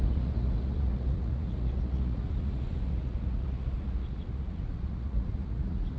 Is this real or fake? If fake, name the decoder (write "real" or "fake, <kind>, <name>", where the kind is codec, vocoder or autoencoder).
fake, vocoder, Vocos